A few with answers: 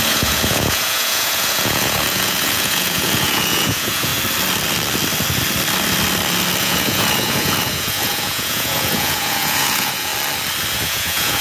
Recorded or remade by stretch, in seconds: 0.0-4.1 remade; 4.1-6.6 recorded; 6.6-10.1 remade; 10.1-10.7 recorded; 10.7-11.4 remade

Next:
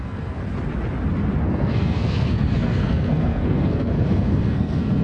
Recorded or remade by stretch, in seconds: 0.0-0.4 remade; 0.4-1.4 recorded; 1.4-5.0 remade

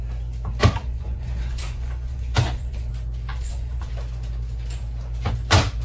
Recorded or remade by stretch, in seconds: 0.0-0.8 recorded; 0.8-2.9 remade; 2.9-3.3 recorded; 3.3-3.9 remade; 3.9-5.8 recorded

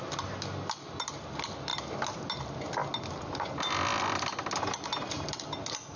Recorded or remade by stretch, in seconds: 0.0-6.0 recorded

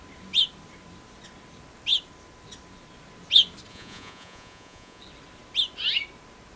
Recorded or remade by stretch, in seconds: 0.0-3.7 recorded; 3.7-5.0 remade; 5.0-6.6 recorded

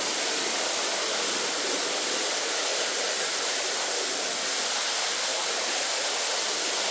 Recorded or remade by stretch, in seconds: 0.0-6.9 recorded

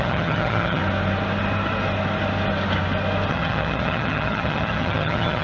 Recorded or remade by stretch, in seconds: 0.0-0.8 remade; 0.8-3.3 recorded; 3.3-5.4 remade